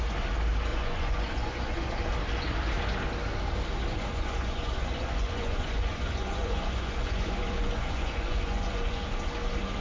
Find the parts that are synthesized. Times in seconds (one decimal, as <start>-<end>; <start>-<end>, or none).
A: 0.7-1.9; 3.9-9.0